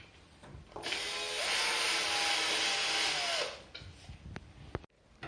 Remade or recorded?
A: recorded